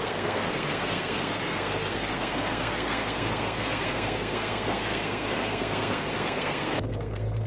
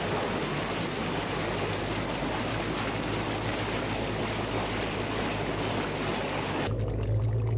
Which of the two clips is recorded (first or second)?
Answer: second